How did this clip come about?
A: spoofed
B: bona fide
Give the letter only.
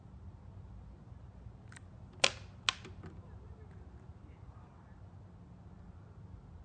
B